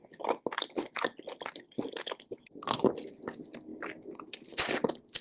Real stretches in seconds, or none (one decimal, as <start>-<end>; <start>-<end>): 3.1-3.7

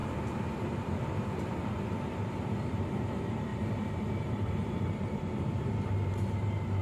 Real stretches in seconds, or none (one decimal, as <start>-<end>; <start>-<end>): 0.0-1.0

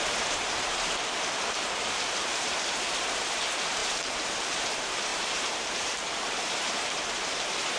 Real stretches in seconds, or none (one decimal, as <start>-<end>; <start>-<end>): none

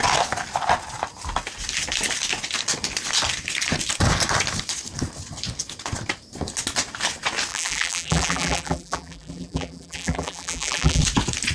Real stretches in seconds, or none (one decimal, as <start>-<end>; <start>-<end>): 0.0-7.5; 11.0-11.5

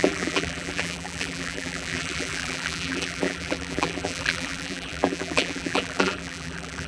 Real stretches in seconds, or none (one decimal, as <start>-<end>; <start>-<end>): none

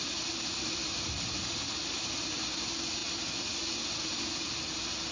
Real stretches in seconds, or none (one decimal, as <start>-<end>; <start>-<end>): 0.0-5.1

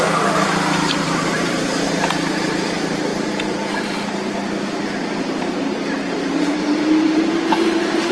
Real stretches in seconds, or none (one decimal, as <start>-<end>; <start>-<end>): 3.1-4.3